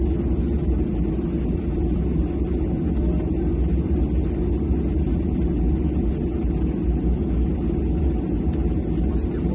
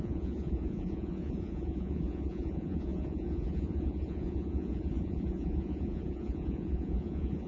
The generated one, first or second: second